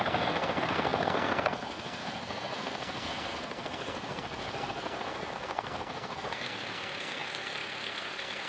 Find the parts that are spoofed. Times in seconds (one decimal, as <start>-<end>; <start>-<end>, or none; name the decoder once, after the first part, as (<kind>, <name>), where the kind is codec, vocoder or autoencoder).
0.0-8.5 (codec, SNAC)